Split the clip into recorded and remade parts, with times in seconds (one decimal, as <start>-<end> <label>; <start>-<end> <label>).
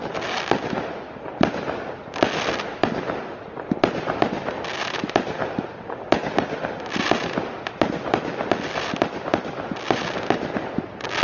0.0-11.2 recorded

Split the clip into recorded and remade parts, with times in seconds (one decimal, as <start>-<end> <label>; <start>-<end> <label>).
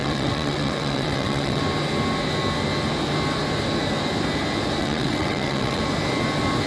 0.0-1.6 remade; 1.6-4.8 recorded; 4.8-5.8 remade; 5.8-6.7 recorded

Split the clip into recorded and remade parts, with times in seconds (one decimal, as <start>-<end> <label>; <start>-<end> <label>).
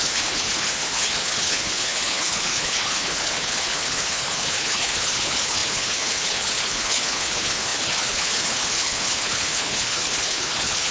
0.0-10.9 remade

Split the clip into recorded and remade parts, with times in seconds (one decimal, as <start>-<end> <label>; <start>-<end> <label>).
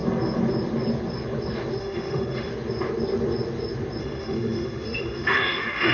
0.0-1.8 recorded; 1.8-2.5 remade; 2.5-4.0 recorded; 4.0-5.9 remade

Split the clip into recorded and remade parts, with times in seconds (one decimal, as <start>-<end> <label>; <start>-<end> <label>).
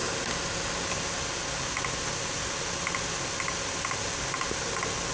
0.0-5.1 recorded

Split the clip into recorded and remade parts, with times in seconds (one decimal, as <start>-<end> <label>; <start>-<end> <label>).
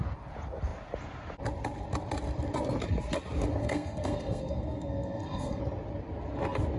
0.0-3.6 recorded; 3.6-5.6 remade; 5.6-6.8 recorded